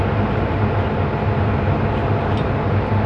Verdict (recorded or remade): recorded